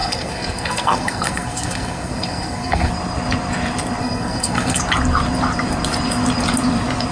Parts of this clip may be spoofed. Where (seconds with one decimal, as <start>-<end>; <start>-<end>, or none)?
0.0-2.9; 4.0-4.8